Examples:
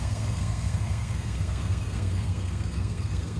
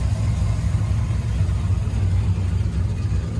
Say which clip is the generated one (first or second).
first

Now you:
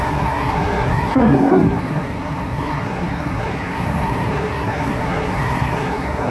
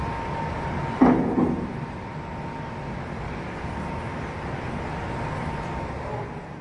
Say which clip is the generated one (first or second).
first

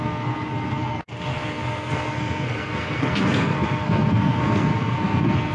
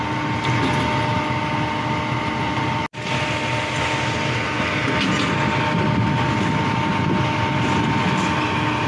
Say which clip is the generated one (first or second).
first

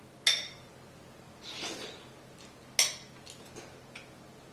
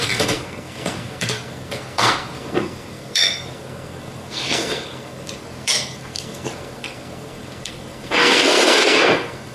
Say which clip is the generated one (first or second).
second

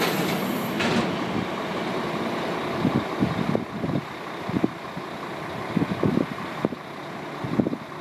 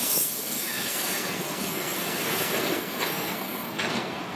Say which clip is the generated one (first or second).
second